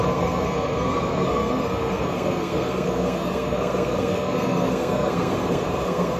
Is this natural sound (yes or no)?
no